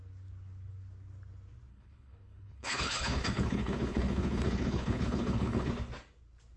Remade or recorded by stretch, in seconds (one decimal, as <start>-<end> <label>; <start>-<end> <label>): 0.0-1.7 recorded; 1.7-5.7 remade; 5.7-6.6 recorded